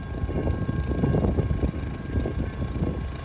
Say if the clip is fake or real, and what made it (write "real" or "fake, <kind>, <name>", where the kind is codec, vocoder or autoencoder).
real